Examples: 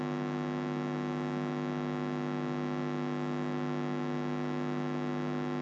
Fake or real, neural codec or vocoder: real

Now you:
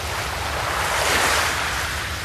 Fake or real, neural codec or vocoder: real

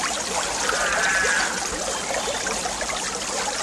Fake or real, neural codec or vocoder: real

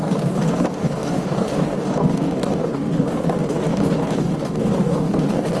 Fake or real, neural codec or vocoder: fake, codec, DAC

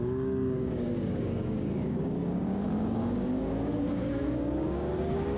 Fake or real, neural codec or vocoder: fake, codec, DAC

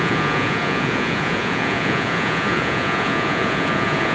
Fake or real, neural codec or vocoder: fake, vocoder, Vocos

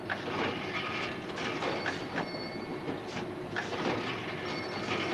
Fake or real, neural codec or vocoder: real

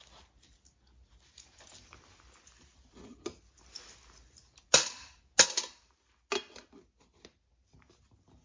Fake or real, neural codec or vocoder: real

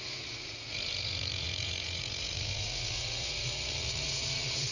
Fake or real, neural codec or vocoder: fake, vocoder, Vocos